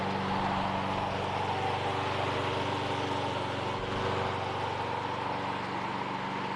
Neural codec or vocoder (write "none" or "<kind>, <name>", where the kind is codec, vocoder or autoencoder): none